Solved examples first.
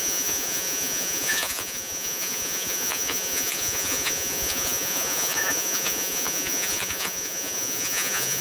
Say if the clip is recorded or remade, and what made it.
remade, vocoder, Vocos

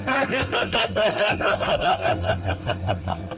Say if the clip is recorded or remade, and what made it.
remade, codec, SNAC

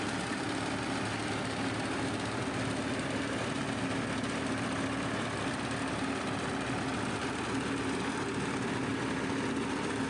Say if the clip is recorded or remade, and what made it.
recorded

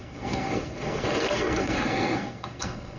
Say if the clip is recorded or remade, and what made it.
remade, codec, SNAC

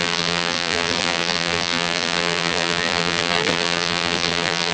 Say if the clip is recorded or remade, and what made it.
remade, vocoder, BigVGAN v2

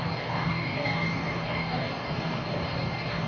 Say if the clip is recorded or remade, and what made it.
remade, codec, DAC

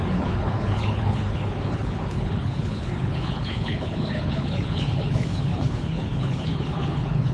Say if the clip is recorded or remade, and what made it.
remade, codec, HILCodec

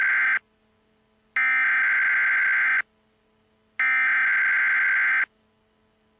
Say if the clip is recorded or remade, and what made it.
recorded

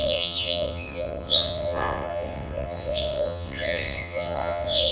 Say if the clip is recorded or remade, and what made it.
remade, vocoder, WaveNeXt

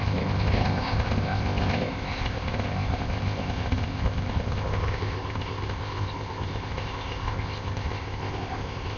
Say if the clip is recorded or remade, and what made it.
remade, codec, ZipCodec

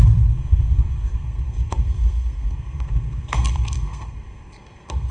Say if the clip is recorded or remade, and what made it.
remade, codec, SNAC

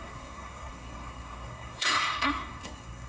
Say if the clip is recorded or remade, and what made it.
remade, codec, SNAC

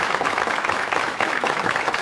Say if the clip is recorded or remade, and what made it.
remade, autoencoder, DAC-VAE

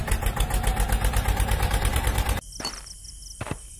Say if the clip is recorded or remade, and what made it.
remade, vocoder, BigVGAN v2